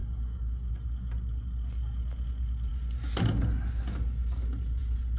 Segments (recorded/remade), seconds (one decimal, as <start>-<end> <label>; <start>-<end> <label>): 0.0-0.7 remade; 0.7-5.2 recorded